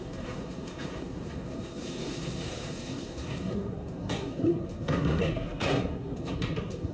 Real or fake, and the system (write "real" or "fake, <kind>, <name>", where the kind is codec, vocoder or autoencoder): fake, codec, SNAC